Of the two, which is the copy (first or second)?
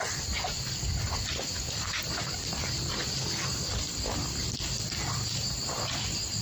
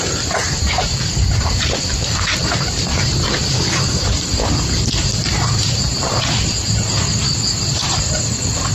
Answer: second